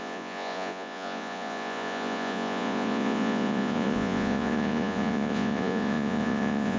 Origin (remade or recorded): remade